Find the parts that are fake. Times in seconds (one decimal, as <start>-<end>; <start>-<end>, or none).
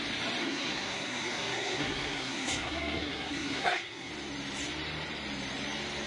0.4-4.1